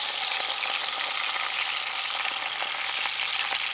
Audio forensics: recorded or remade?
recorded